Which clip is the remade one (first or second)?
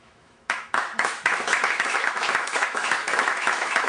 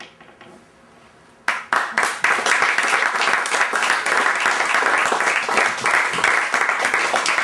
first